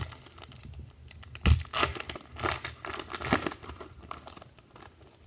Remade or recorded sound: recorded